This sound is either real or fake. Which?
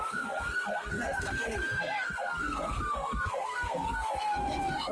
fake